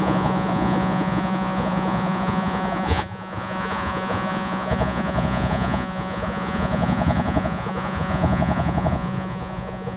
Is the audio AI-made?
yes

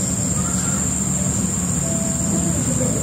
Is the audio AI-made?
no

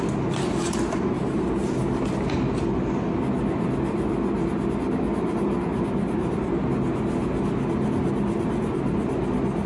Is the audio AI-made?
no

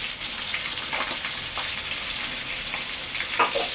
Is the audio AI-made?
no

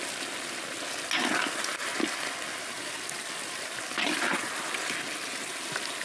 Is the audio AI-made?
no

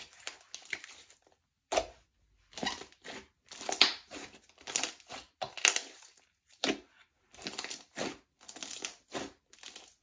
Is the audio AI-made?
no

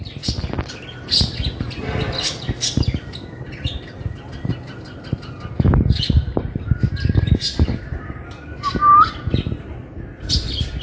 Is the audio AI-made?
no